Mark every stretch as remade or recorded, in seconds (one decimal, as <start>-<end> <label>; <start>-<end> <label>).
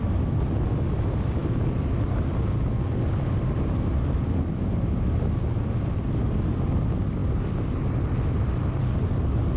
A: 0.0-9.6 recorded